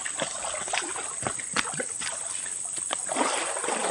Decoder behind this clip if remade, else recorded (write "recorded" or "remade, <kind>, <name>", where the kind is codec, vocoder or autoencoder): recorded